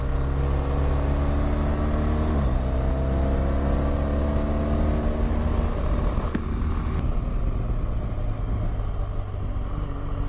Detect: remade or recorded recorded